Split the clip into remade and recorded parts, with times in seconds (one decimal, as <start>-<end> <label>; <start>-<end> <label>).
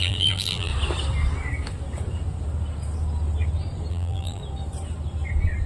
0.0-0.7 remade; 0.7-3.9 recorded; 3.9-4.4 remade; 4.4-5.7 recorded